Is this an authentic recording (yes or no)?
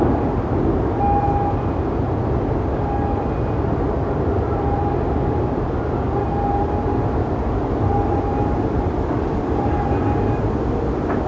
yes